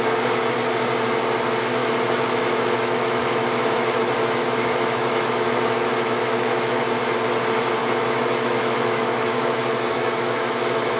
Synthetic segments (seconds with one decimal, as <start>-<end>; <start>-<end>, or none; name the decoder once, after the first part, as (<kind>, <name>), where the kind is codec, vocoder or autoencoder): 1.8-6.8 (autoencoder, DAC-VAE); 7.8-11.0